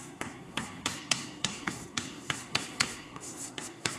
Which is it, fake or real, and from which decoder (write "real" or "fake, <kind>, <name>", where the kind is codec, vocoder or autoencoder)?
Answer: fake, codec, SNAC